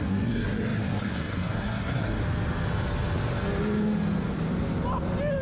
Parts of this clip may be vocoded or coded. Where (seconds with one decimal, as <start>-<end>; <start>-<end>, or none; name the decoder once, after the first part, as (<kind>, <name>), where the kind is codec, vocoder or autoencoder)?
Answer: 0.0-2.2 (codec, SNAC)